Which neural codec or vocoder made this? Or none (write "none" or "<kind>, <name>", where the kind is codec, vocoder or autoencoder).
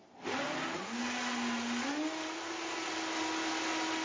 none